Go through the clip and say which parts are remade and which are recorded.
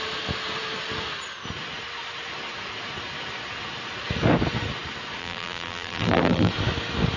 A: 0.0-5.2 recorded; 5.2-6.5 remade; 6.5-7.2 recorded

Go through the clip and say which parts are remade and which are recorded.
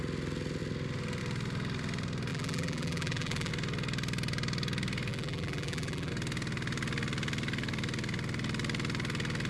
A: 0.0-2.3 recorded; 2.3-3.5 remade; 3.5-5.1 recorded; 5.1-6.1 remade; 6.1-9.5 recorded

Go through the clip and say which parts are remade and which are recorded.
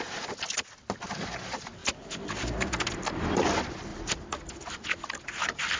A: 0.0-1.8 recorded; 1.8-3.0 remade; 3.0-3.9 recorded; 3.9-4.6 remade; 4.6-5.8 recorded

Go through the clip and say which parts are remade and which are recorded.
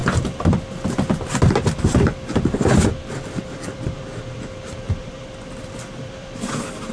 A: 0.0-3.4 recorded; 3.4-6.9 remade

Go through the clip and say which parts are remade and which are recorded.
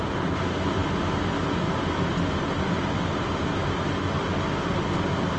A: 0.0-0.8 remade; 0.8-1.7 recorded; 1.7-3.6 remade; 3.6-5.4 recorded